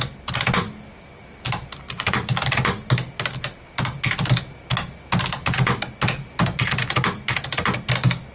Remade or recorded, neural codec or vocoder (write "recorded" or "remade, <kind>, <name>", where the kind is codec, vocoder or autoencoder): recorded